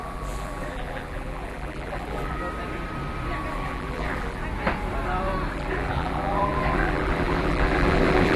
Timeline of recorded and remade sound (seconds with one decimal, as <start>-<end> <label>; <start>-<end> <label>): 0.0-2.4 remade; 2.4-3.5 recorded; 3.5-4.4 remade; 4.4-5.5 recorded; 5.5-8.4 remade